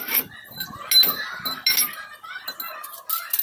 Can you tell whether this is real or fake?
real